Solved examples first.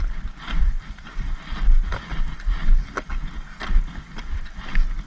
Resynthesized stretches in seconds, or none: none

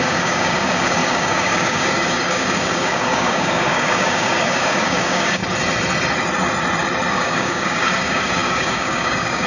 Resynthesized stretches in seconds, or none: 0.0-5.4 (codec, DAC); 7.1-9.5

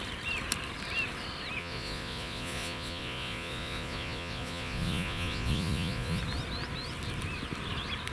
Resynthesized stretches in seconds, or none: 1.6-6.2 (vocoder, Vocos)

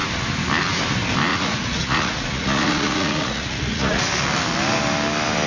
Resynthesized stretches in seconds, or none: 1.3-4.1 (vocoder, Vocos)

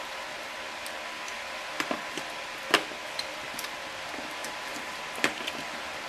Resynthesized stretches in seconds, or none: none

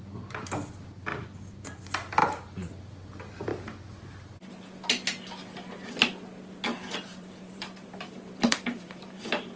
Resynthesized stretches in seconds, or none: 1.1-1.8 (vocoder, BigVGAN v2); 2.2-2.8; 6.7-9.2

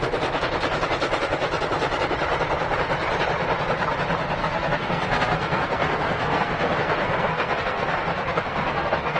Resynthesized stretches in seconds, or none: 4.4-9.2 (codec, SNAC)

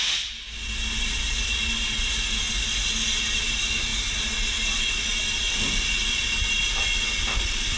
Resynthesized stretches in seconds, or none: none